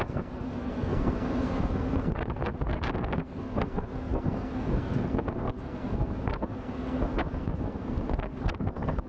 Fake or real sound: fake